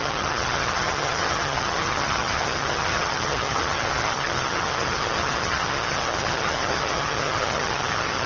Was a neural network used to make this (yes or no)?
yes